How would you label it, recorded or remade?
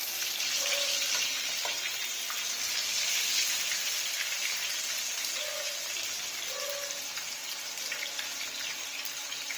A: recorded